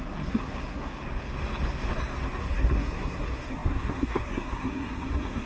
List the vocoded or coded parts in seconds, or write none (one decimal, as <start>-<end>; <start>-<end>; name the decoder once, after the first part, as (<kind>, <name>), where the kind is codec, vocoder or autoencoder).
0.0-1.0 (codec, SNAC); 2.4-5.5